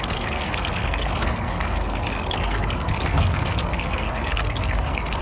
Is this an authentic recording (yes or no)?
no